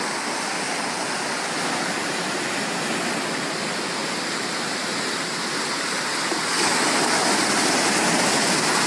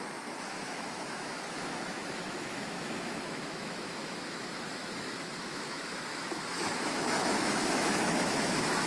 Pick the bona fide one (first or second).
first